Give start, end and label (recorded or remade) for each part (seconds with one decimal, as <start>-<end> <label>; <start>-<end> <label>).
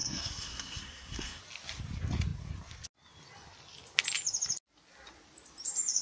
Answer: 0.0-1.4 remade; 1.4-6.0 recorded